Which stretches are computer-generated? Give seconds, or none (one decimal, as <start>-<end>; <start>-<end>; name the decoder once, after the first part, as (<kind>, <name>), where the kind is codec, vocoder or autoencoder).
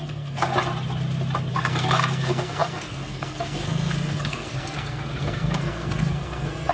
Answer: 0.0-0.5 (codec, SNAC); 1.5-6.7